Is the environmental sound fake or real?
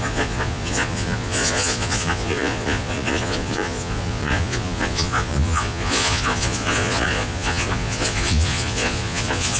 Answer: fake